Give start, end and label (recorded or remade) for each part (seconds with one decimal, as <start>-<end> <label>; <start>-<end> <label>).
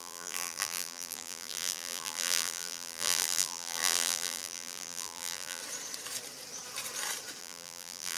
0.0-5.6 remade; 5.6-7.4 recorded; 7.4-8.2 remade